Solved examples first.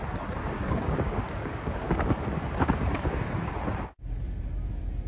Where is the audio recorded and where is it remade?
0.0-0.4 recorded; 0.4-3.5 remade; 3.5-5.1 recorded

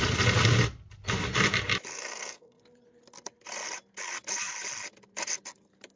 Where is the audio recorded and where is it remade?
0.0-1.9 recorded; 1.9-2.6 remade; 2.6-6.0 recorded

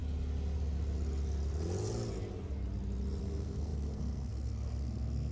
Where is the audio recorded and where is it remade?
0.0-3.2 recorded; 3.2-5.3 remade

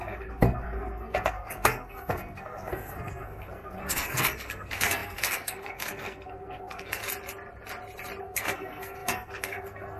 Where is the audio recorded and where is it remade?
0.0-7.0 remade; 7.0-8.2 recorded; 8.2-10.0 remade

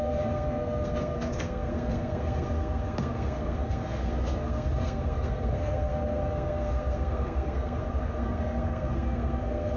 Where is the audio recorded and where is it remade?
0.0-9.8 remade

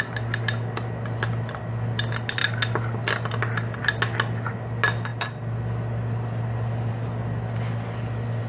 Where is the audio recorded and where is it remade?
0.0-8.5 recorded

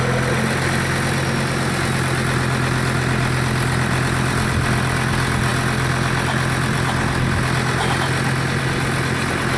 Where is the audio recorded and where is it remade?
0.0-9.6 recorded

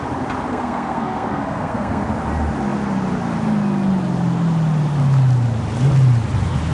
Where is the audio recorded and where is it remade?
0.0-0.5 recorded; 0.5-2.0 remade; 2.0-6.7 recorded